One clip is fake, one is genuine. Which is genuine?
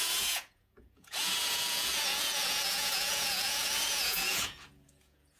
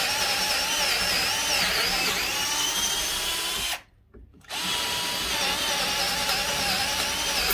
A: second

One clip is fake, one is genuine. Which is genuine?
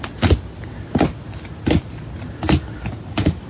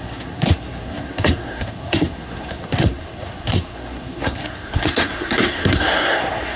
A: first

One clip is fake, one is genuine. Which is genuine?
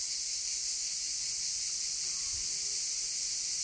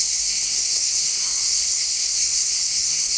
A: first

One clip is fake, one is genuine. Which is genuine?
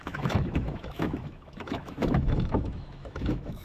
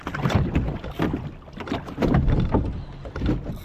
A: second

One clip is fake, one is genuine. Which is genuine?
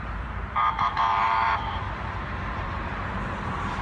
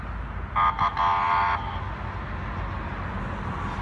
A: second